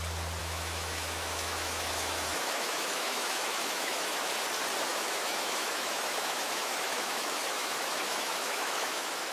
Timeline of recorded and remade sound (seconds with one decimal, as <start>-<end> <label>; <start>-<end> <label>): 0.0-0.4 recorded; 0.4-4.3 remade; 4.3-4.9 recorded; 4.9-9.3 remade